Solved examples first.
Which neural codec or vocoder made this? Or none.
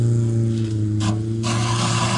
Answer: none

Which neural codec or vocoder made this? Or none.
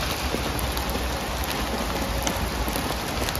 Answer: none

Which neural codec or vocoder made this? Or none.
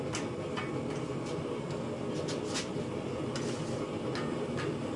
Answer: none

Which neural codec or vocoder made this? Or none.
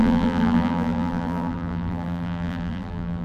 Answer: vocoder, BigVGAN v2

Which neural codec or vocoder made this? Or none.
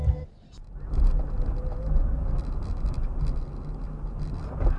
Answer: none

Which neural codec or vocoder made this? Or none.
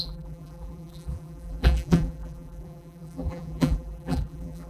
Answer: vocoder, BigVGAN v2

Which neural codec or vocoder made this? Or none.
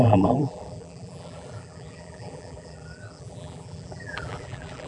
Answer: vocoder, BigVGAN v2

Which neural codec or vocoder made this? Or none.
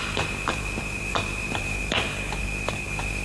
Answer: vocoder, BigVGAN v2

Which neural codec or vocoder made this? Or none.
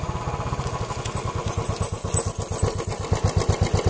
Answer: none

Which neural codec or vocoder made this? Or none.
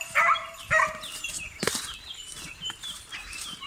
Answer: vocoder, BigVGAN v2